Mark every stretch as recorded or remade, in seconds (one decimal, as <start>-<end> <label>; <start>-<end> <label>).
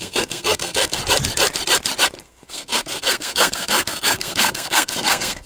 0.0-1.0 remade; 1.0-2.2 recorded; 2.2-5.5 remade